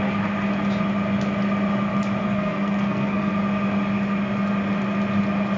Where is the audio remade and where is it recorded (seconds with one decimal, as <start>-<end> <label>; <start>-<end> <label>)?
0.0-2.2 recorded; 2.2-3.3 remade; 3.3-5.6 recorded